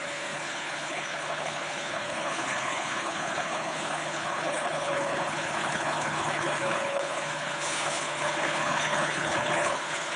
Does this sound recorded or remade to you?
remade